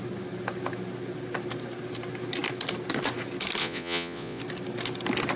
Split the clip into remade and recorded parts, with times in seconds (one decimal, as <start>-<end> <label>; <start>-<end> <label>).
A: 0.0-3.6 recorded; 3.6-4.4 remade; 4.4-5.4 recorded